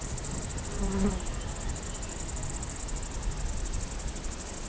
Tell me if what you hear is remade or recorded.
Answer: recorded